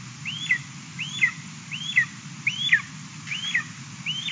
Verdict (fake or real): real